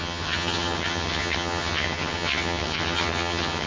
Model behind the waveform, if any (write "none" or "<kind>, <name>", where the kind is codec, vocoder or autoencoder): vocoder, HiFi-GAN